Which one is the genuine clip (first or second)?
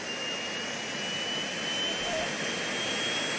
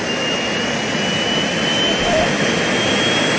first